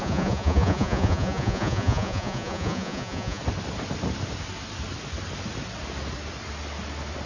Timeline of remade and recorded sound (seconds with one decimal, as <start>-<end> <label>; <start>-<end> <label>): 0.0-3.4 remade; 3.4-7.3 recorded